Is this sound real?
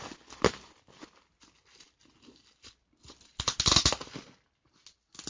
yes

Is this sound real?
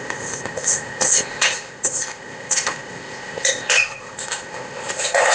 no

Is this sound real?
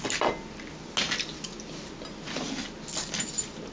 yes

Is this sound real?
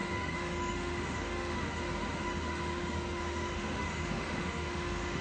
no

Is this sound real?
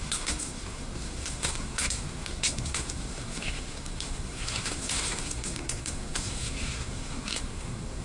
no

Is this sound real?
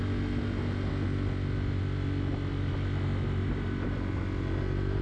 yes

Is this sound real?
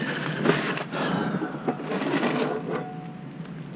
yes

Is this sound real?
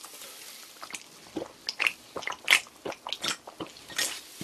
yes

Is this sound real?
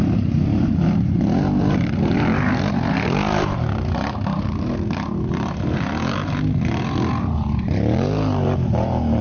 no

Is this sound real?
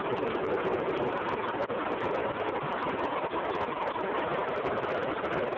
yes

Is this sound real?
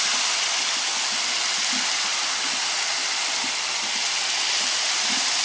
yes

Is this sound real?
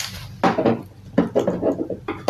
yes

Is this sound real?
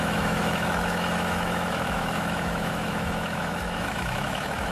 no